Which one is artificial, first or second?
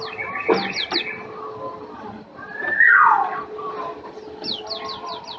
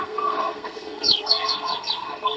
second